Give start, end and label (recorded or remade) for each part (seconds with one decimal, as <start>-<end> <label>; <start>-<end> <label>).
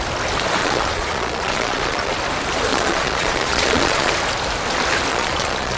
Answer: 0.0-0.6 recorded; 0.6-2.1 remade; 2.1-2.7 recorded; 2.7-4.1 remade; 4.1-5.1 recorded; 5.1-5.8 remade